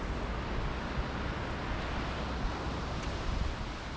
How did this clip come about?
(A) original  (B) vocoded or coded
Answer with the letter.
A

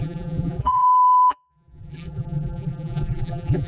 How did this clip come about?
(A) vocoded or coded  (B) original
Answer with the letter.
A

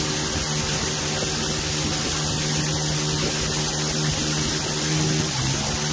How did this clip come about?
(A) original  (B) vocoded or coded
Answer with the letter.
A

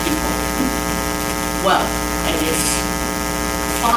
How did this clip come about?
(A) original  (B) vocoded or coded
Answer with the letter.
A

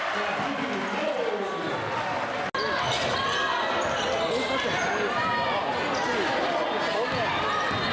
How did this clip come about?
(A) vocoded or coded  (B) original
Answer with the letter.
B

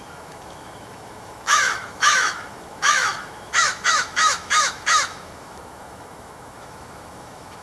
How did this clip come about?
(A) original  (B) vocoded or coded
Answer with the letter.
B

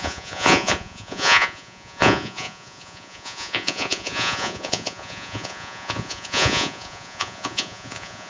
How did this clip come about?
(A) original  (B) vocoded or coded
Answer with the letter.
B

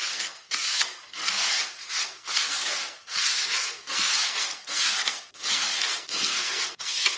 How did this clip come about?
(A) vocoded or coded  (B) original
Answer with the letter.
A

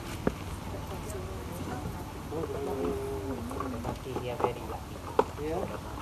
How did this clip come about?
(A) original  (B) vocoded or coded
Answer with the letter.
A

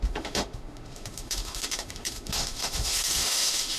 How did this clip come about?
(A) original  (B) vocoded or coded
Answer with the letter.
B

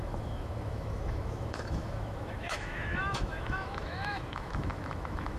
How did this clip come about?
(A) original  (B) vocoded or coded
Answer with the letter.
B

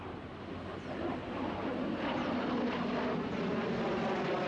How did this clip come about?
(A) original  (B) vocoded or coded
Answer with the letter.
A